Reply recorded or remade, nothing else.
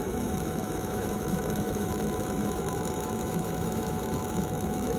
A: remade